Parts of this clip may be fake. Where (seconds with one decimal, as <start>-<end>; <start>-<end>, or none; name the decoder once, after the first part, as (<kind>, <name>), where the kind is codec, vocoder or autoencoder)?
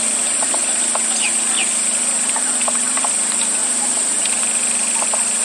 none